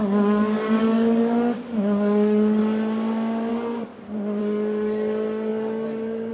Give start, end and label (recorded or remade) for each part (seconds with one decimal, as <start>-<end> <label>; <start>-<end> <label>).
0.0-2.6 remade; 2.6-3.5 recorded; 3.5-3.9 remade; 3.9-4.4 recorded; 4.4-6.3 remade